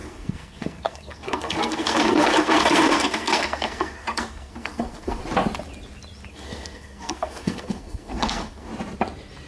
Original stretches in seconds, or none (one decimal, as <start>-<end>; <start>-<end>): 5.2-6.3; 8.7-9.5